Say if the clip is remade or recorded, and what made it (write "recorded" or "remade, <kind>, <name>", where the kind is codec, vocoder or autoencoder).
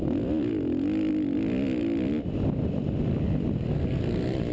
recorded